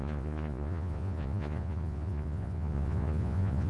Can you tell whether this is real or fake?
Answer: fake